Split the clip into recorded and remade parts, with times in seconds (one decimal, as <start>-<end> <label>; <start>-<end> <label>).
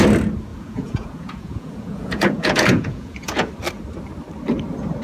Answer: 0.0-0.5 recorded; 0.5-3.5 remade; 3.5-5.0 recorded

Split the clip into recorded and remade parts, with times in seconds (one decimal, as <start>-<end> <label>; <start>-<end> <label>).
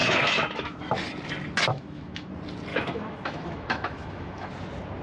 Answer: 0.0-0.8 remade; 0.8-1.7 recorded; 1.7-2.3 remade; 2.3-2.7 recorded; 2.7-4.5 remade; 4.5-5.0 recorded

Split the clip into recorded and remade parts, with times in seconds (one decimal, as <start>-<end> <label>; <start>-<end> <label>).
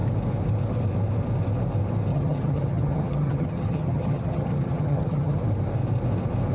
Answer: 0.0-2.1 recorded; 2.1-5.4 remade; 5.4-6.5 recorded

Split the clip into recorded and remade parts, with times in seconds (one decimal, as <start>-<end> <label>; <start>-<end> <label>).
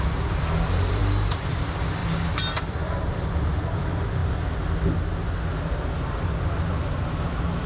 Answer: 0.0-1.0 remade; 1.0-1.5 recorded; 1.5-2.0 remade; 2.0-2.6 recorded; 2.6-4.2 remade; 4.2-6.7 recorded; 6.7-7.7 remade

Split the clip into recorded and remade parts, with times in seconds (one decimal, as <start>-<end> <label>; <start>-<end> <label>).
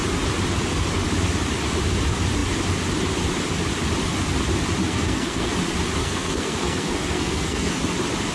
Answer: 0.0-4.8 recorded; 4.8-5.5 remade; 5.5-6.0 recorded; 6.0-7.8 remade; 7.8-8.3 recorded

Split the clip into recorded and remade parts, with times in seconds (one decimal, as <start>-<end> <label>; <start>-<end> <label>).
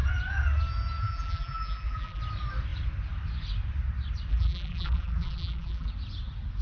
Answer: 0.0-1.0 recorded; 1.0-2.2 remade; 2.2-4.3 recorded; 4.3-5.9 remade; 5.9-6.6 recorded